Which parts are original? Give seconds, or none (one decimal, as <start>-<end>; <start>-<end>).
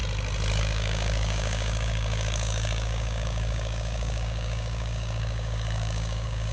0.0-0.6